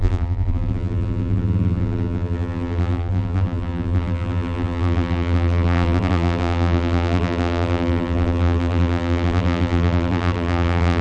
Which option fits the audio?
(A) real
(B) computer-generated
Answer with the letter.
B